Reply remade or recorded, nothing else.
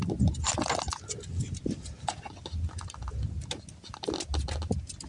recorded